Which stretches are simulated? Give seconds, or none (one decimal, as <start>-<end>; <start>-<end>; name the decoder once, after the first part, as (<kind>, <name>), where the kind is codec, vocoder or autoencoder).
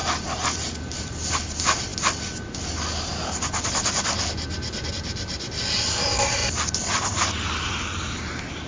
1.0-1.9 (vocoder, BigVGAN v2); 4.9-6.4; 7.8-8.7